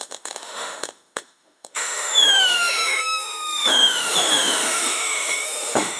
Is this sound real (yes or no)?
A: no